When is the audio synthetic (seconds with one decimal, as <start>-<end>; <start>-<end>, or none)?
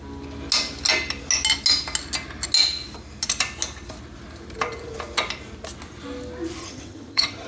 6.6-7.5